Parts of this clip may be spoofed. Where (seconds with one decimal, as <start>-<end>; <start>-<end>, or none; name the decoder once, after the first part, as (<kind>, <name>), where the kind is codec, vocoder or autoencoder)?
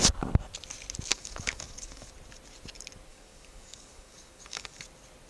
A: 1.1-2.1 (codec, DAC); 3.1-4.8